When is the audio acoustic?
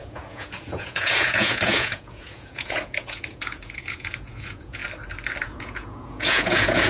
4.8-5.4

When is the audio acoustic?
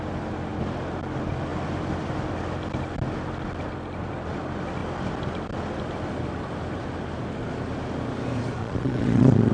0.0-8.6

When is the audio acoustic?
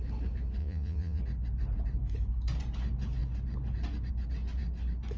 0.0-0.6; 1.2-5.2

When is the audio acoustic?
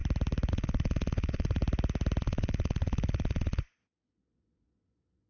0.0-0.5; 1.6-2.2